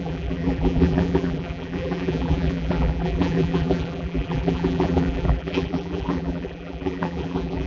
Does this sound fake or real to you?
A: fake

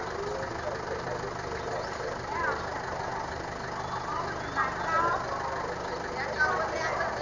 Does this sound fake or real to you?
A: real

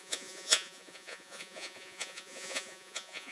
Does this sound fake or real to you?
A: fake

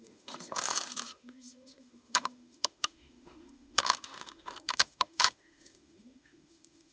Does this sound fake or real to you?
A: fake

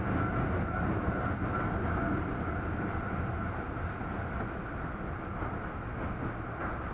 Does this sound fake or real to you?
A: real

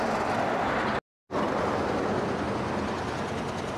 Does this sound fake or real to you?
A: real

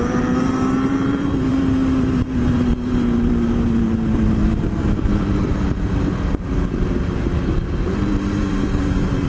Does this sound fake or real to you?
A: fake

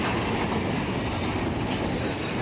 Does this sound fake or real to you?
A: real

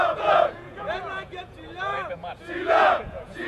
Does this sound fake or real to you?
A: fake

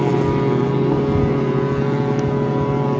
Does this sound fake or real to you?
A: real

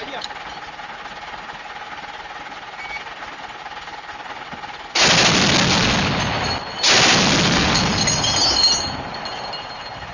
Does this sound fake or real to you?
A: real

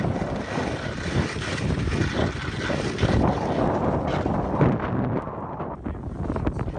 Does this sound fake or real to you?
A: real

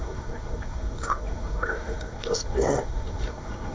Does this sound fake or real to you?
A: fake